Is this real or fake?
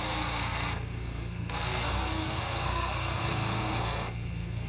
fake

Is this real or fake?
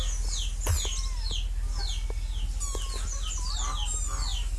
real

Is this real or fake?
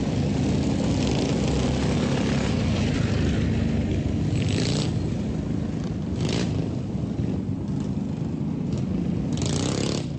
real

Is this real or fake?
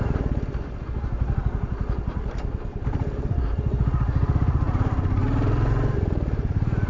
real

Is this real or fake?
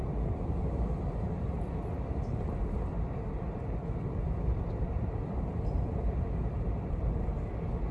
real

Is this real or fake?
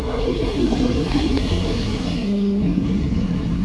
fake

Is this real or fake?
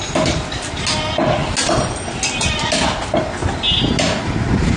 real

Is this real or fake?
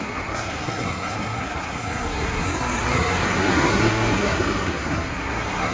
fake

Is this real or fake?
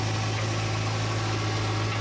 real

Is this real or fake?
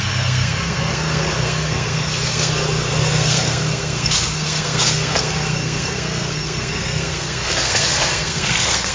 fake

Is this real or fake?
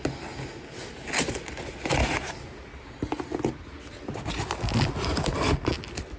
real